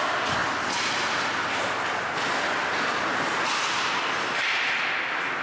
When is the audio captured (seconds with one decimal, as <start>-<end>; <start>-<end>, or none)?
0.0-0.4; 1.5-5.4